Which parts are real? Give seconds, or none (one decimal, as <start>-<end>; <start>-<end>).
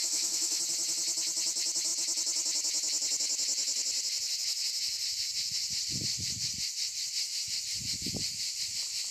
0.6-9.1